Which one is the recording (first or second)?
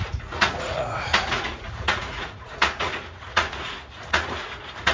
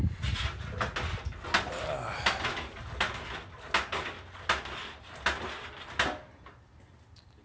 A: second